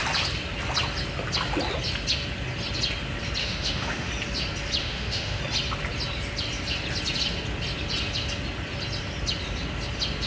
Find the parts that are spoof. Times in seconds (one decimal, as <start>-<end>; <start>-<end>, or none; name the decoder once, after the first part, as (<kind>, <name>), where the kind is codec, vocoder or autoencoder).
3.4-4.1 (autoencoder, DAC-VAE); 4.8-5.4